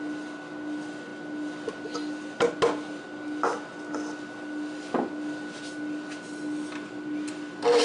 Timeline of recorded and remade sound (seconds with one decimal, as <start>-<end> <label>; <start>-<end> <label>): 0.0-7.8 recorded